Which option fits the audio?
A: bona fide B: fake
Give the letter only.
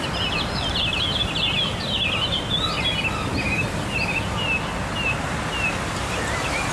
A